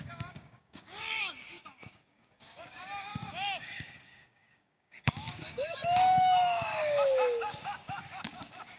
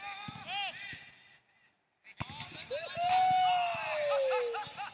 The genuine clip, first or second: second